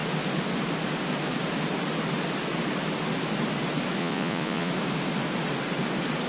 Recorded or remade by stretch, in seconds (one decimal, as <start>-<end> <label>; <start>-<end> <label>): 0.0-4.0 recorded; 4.0-4.7 remade; 4.7-6.3 recorded